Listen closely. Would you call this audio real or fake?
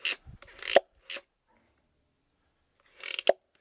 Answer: real